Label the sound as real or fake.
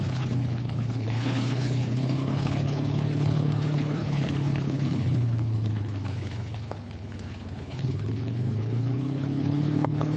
fake